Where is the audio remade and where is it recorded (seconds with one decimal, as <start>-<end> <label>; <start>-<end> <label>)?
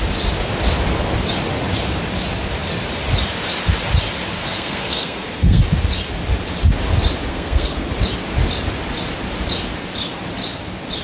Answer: 0.0-4.4 recorded; 4.4-5.6 remade; 5.6-7.3 recorded; 7.3-7.9 remade; 7.9-11.0 recorded